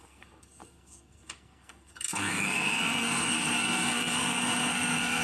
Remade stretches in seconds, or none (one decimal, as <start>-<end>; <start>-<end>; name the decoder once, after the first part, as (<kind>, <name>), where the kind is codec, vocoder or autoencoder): 0.0-5.2 (codec, SNAC)

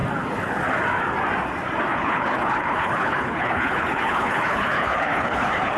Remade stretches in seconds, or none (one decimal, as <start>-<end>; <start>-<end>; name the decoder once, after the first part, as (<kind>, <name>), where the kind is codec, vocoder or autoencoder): 1.9-5.8 (codec, HILCodec)

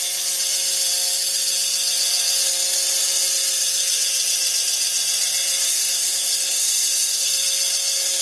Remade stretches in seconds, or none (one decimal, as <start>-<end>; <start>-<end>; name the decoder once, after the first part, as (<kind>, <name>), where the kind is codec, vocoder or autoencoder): 5.7-7.3 (codec, SNAC)

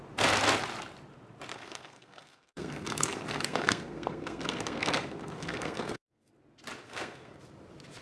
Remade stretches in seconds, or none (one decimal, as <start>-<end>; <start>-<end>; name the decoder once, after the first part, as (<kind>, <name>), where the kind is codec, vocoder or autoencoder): 1.5-6.3 (codec, SNAC); 6.8-7.4

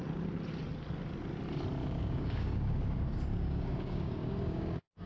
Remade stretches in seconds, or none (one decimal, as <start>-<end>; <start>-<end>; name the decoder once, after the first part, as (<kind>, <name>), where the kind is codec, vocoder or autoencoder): 1.8-5.1 (codec, DAC)

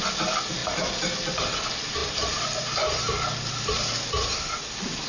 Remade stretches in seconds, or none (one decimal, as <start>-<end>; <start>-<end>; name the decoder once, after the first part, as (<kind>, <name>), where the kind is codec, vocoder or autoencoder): 2.0-3.7 (vocoder, BigVGAN v2)

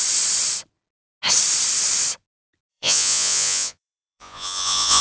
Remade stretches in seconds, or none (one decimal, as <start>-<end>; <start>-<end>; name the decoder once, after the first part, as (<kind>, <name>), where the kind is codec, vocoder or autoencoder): 2.7-5.0 (vocoder, Vocos)